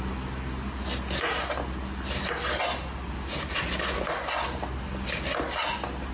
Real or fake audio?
real